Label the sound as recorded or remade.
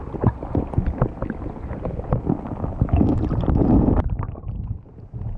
recorded